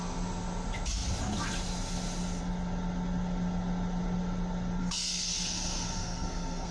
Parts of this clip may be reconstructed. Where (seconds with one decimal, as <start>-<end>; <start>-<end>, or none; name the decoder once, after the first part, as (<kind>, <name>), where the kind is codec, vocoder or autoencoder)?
4.8-6.7 (codec, SNAC)